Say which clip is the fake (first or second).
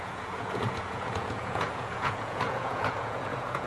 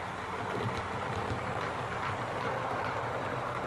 first